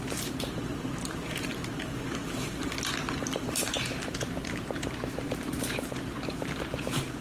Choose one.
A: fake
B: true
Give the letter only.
A